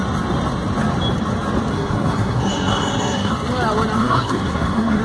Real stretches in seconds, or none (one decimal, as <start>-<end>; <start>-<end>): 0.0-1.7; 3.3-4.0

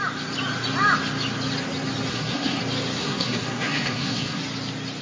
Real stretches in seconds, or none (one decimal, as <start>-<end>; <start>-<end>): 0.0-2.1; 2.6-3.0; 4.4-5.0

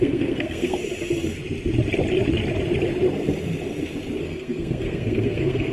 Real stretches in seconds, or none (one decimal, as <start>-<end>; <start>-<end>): 0.8-4.2

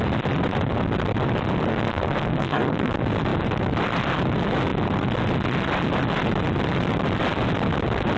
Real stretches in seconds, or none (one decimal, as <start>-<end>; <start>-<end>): 0.0-1.7; 2.9-8.2